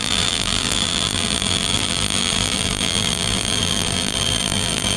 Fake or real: fake